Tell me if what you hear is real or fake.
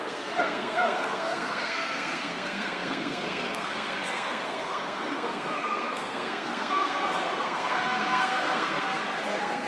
fake